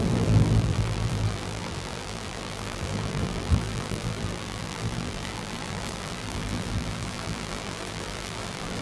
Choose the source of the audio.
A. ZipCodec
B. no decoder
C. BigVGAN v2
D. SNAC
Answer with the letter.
C